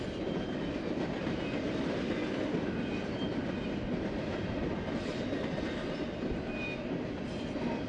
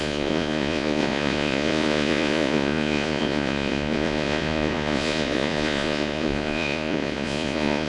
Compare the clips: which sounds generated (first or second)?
second